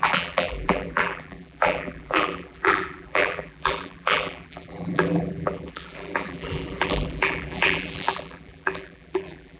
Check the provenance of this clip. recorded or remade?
remade